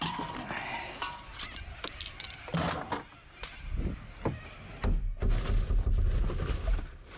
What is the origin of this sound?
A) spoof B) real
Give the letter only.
B